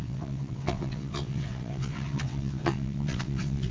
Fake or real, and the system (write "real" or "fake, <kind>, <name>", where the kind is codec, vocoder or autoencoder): fake, vocoder, WaveNeXt